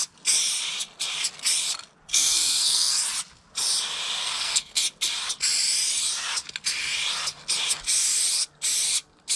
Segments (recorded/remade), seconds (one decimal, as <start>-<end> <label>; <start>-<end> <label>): 0.0-2.1 recorded; 2.1-3.0 remade; 3.0-4.2 recorded; 4.2-4.8 remade; 4.8-9.4 recorded